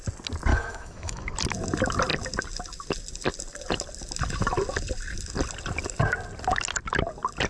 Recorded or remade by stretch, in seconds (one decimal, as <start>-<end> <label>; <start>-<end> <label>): 0.0-0.5 recorded; 0.5-1.3 remade; 1.3-7.5 recorded